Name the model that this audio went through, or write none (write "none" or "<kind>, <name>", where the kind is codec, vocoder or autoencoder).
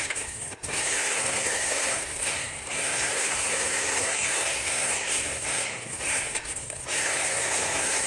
codec, SNAC